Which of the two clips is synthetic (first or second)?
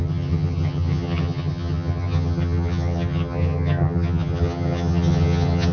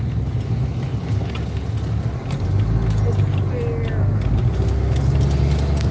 first